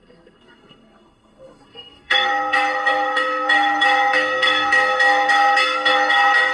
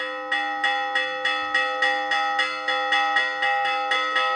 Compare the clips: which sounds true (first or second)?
second